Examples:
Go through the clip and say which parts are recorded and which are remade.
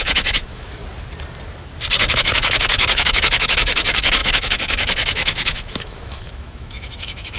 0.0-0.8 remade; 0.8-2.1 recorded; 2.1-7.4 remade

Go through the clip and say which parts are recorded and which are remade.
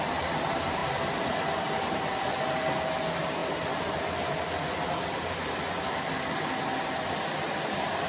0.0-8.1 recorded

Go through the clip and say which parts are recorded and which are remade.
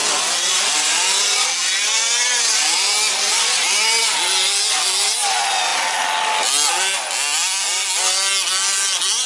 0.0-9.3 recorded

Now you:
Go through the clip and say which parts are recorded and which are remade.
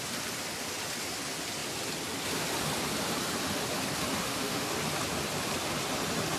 0.0-4.2 recorded; 4.2-4.7 remade; 4.7-6.4 recorded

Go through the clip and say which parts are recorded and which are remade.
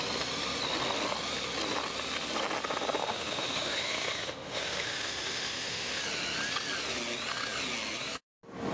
0.0-3.0 recorded; 3.0-6.0 remade; 6.0-8.7 recorded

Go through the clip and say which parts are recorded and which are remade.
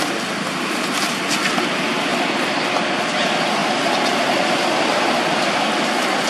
0.0-6.3 recorded